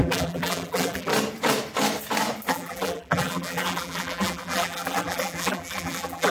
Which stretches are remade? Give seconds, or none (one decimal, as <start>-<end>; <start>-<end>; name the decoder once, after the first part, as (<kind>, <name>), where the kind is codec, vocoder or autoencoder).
0.0-1.1 (vocoder, BigVGAN v2); 2.5-6.3